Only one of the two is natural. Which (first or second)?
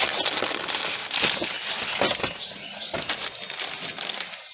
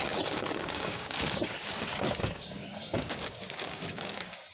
first